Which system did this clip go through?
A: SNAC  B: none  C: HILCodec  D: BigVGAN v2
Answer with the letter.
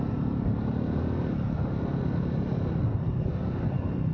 B